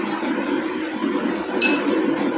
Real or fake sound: real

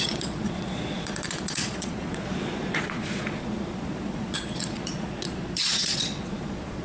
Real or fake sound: fake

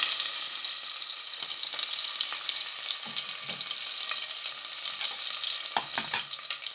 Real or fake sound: real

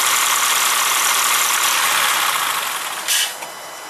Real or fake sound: real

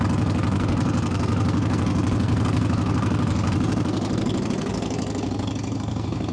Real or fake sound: fake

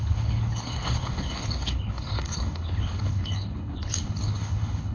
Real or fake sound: fake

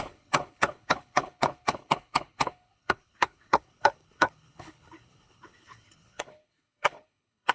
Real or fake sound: fake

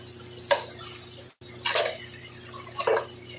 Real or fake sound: real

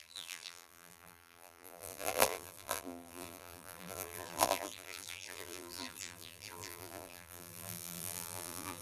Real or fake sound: fake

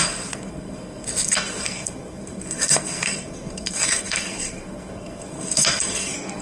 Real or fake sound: fake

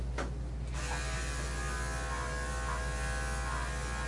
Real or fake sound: real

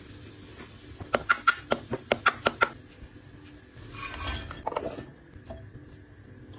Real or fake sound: real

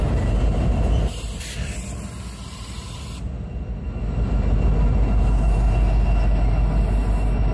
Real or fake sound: real